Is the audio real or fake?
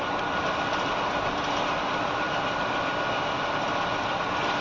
real